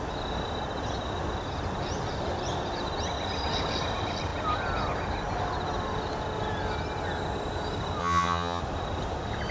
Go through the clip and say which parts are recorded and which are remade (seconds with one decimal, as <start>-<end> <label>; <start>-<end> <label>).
0.0-8.0 recorded; 8.0-8.6 remade; 8.6-9.5 recorded